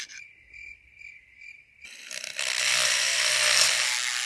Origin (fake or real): real